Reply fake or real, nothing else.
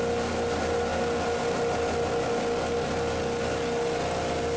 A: real